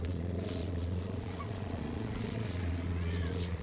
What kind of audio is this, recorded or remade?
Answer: remade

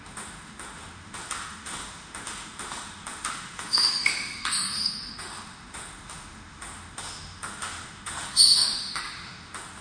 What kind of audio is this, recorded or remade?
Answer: remade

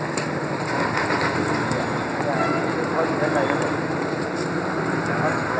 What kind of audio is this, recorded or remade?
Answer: recorded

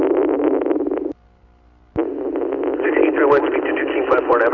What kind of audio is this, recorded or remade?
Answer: recorded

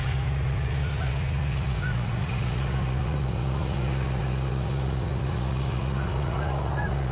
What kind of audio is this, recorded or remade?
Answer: remade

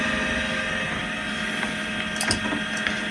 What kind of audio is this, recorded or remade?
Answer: recorded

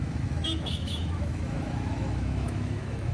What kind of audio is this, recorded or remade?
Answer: remade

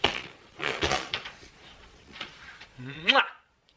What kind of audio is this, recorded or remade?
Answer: remade